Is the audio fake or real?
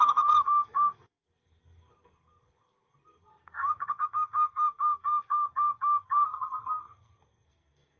fake